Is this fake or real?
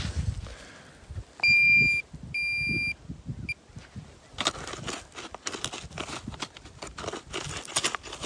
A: real